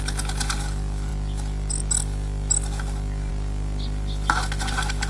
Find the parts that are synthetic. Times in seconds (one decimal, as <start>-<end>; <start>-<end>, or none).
none